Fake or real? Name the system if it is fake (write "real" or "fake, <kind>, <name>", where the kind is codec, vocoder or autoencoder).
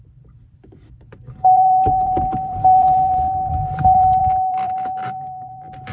fake, vocoder, BigVGAN v2